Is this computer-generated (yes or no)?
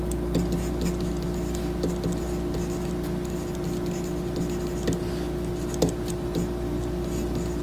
no